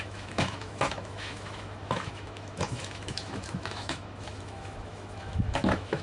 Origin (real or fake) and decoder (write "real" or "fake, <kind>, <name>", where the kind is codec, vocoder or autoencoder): fake, autoencoder, DAC-VAE